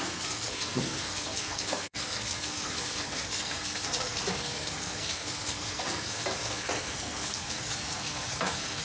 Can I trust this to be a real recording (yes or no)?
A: no